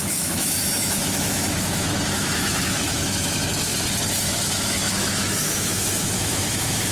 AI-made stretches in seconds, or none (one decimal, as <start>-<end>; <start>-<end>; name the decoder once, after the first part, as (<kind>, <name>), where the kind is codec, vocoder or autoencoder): 0.0-3.7 (autoencoder, DAC-VAE); 4.2-6.9